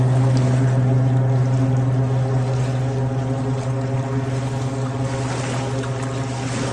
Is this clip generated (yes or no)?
no